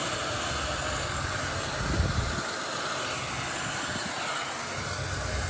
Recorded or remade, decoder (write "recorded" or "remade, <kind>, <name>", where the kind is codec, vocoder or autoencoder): recorded